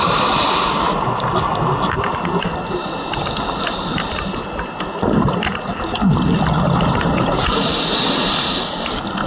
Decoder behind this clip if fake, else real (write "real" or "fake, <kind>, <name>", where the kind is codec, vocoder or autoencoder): real